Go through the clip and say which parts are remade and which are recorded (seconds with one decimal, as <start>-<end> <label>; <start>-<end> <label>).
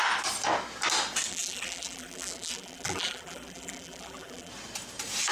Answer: 0.0-1.3 recorded; 1.3-4.5 remade; 4.5-5.3 recorded